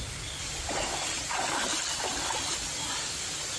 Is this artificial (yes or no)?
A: no